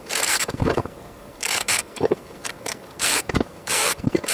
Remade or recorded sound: remade